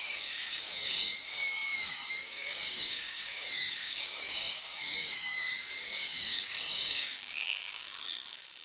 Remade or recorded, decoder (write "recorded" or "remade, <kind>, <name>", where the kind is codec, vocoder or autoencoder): remade, codec, DAC